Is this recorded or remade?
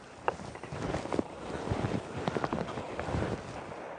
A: remade